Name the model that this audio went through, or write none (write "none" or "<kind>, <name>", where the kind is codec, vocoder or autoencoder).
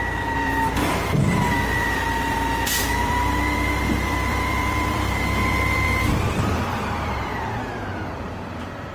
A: vocoder, BigVGAN v2